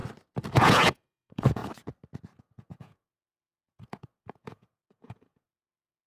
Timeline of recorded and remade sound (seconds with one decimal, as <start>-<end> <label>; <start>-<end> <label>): 0.0-0.5 recorded; 0.5-1.6 remade; 1.6-2.4 recorded; 2.4-6.1 remade